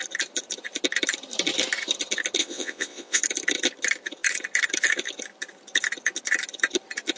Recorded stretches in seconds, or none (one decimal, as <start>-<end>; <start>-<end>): 0.0-2.4; 3.2-7.2